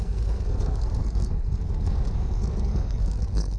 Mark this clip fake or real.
fake